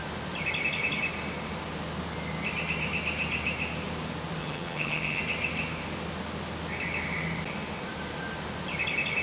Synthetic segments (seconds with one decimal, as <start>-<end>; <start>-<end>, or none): 4.4-5.2